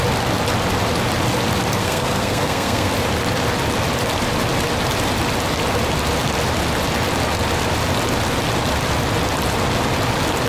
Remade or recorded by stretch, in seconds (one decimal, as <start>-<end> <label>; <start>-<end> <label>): 0.0-1.8 recorded; 1.8-2.9 remade; 2.9-10.5 recorded